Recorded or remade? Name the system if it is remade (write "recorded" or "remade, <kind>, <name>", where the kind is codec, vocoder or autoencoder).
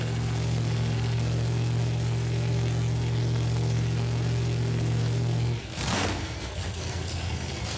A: remade, codec, SNAC